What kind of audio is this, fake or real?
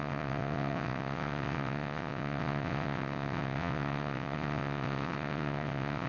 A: fake